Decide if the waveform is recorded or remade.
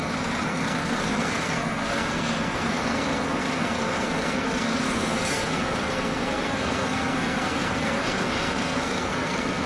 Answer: remade